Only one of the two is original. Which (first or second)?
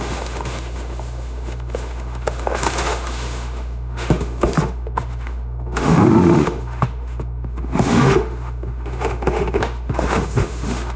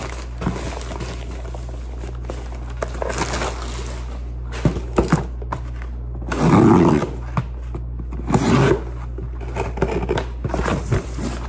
second